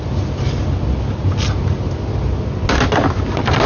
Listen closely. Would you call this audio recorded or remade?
recorded